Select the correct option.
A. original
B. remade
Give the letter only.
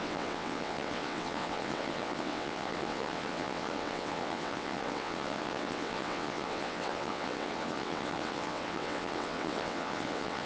B